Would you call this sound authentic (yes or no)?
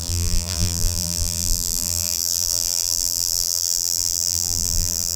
no